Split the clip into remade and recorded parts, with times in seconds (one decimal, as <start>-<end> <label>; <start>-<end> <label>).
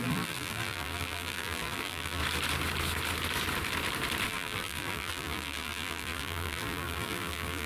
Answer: 0.0-2.2 remade; 2.2-4.3 recorded; 4.3-7.7 remade